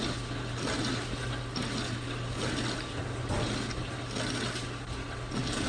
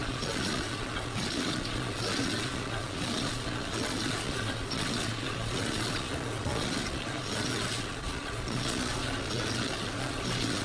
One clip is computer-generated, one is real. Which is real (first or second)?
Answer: first